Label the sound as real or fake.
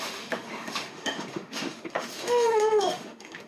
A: fake